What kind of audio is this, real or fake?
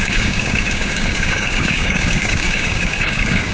fake